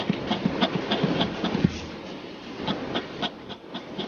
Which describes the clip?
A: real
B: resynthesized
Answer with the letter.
B